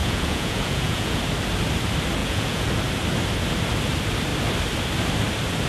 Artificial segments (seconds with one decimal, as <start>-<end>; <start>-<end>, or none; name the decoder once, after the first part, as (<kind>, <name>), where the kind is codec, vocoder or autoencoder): 0.0-1.2 (vocoder, Vocos); 2.2-2.7